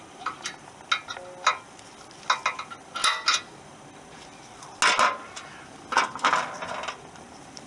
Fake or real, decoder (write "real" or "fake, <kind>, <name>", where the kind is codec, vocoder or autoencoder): real